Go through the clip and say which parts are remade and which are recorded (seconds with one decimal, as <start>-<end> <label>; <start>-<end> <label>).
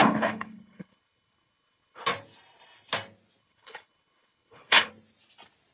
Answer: 0.0-2.0 remade; 2.0-3.4 recorded; 3.4-4.9 remade; 4.9-5.7 recorded